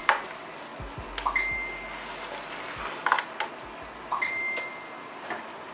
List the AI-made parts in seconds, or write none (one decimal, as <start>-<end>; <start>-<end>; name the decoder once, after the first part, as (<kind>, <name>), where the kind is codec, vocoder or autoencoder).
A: none